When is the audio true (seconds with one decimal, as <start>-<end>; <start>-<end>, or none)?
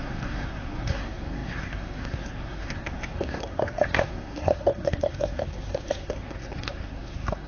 none